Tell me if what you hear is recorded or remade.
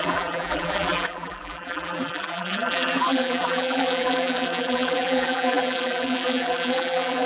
remade